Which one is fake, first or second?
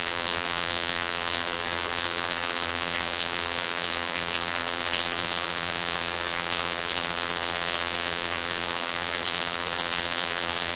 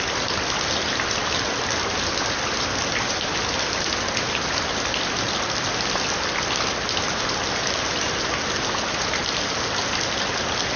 first